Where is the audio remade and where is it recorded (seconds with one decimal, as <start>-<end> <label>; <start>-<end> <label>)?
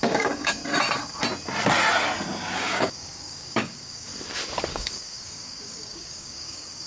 0.0-0.6 remade; 0.6-2.6 recorded; 2.6-4.1 remade; 4.1-4.7 recorded; 4.7-6.9 remade